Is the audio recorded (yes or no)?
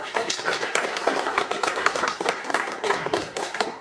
no